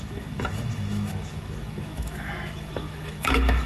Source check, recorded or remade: remade